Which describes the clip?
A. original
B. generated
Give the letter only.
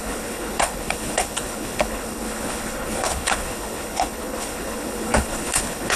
B